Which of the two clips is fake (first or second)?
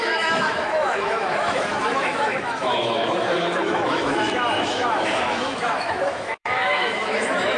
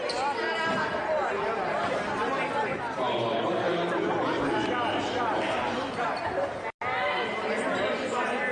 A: first